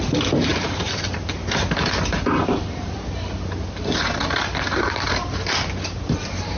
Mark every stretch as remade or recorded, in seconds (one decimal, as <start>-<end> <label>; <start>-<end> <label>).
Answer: 0.0-0.5 recorded; 0.5-1.4 remade; 1.4-2.4 recorded; 2.4-3.1 remade; 3.1-6.6 recorded